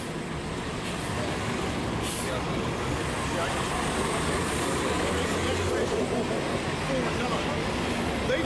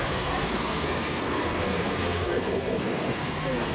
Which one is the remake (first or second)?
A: second